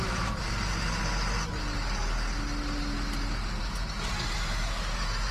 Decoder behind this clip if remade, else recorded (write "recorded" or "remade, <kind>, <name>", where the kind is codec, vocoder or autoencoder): recorded